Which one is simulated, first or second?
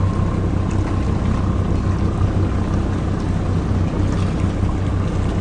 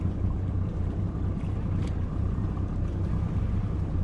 second